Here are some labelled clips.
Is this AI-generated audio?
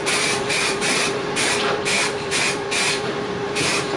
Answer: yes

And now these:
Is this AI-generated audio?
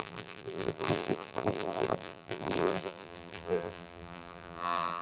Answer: yes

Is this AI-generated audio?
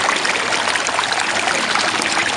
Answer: no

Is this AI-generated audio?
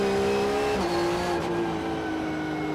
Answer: no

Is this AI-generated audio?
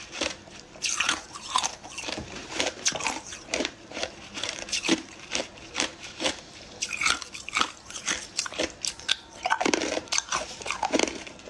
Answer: yes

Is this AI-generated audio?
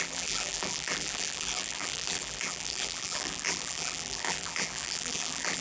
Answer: yes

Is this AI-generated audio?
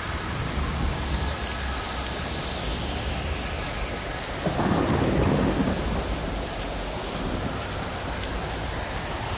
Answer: no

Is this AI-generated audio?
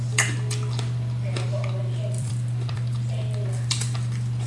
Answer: yes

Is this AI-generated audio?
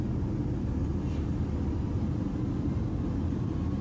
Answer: yes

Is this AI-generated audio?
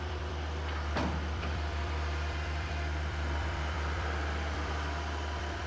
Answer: yes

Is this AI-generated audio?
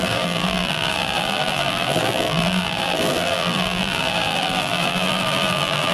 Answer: yes